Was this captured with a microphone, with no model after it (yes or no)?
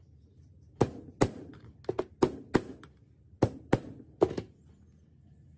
yes